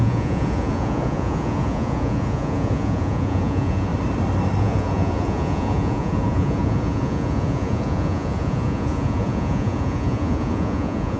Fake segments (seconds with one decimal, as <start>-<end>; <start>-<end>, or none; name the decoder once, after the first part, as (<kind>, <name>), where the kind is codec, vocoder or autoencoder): 0.0-3.9 (vocoder, Vocos); 4.6-11.2